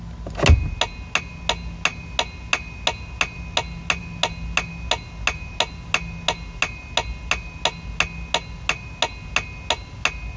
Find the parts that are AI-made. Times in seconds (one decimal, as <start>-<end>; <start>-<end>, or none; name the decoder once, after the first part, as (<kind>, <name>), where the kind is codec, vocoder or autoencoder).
none